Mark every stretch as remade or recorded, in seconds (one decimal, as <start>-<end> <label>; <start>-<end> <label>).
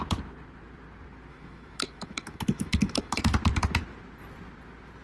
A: 0.0-1.3 recorded; 1.3-3.2 remade; 3.2-5.0 recorded